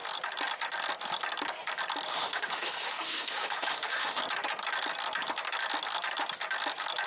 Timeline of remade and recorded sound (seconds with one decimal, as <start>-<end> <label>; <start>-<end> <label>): 0.0-2.1 recorded; 2.1-4.2 remade; 4.2-7.1 recorded

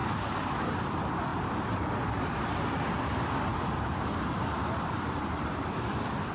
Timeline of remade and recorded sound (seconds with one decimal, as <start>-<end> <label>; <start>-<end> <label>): 0.0-3.5 recorded; 3.5-5.8 remade; 5.8-6.3 recorded

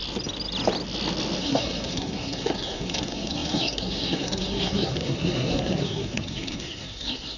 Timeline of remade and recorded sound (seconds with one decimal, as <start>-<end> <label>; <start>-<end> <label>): 0.0-1.4 recorded; 1.4-7.4 remade

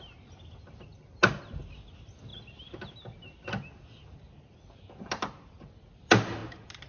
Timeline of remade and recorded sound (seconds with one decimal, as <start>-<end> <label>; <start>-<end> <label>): 0.0-6.9 recorded

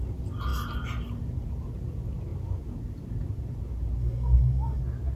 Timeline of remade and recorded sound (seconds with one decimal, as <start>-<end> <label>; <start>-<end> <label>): 0.0-4.0 recorded; 4.0-4.8 remade; 4.8-5.2 recorded